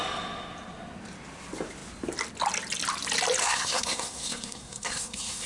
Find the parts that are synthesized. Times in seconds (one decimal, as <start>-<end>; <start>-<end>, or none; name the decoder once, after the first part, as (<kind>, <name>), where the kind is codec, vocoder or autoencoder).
3.4-5.5 (codec, SNAC)